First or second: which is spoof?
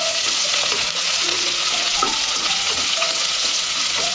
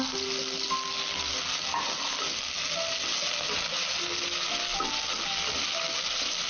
first